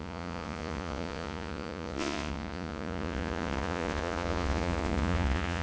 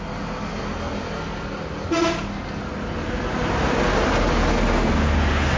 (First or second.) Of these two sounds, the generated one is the first